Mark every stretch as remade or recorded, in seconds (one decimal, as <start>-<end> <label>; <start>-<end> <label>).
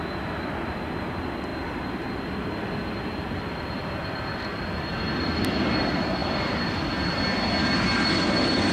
0.0-1.5 recorded; 1.5-4.5 remade; 4.5-6.2 recorded; 6.2-6.9 remade; 6.9-8.7 recorded